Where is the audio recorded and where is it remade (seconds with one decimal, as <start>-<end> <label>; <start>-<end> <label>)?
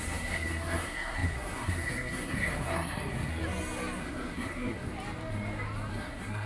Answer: 0.0-3.4 remade; 3.4-4.0 recorded; 4.0-4.9 remade; 4.9-5.9 recorded; 5.9-6.5 remade